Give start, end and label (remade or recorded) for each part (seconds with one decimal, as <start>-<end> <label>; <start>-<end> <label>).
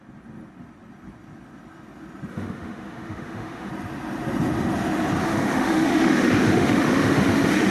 0.0-2.3 recorded; 2.3-3.7 remade; 3.7-5.2 recorded; 5.2-7.7 remade